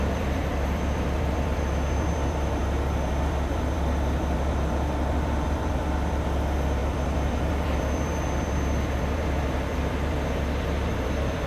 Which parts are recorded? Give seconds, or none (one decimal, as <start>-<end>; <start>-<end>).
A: none